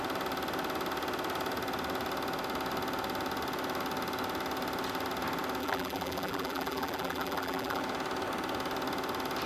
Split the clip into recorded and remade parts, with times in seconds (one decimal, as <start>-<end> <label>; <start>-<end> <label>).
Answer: 0.0-5.6 recorded; 5.6-7.8 remade; 7.8-9.5 recorded